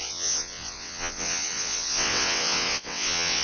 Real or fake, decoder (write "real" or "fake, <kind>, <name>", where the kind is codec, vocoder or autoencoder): fake, vocoder, WaveNeXt